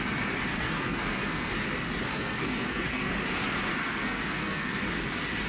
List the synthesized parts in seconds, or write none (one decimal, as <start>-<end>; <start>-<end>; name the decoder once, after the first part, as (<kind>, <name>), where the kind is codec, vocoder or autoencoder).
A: 0.5-1.5 (codec, SNAC); 2.1-3.1; 3.8-4.8